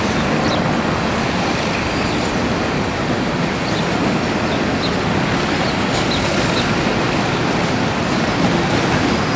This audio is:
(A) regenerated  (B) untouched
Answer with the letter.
B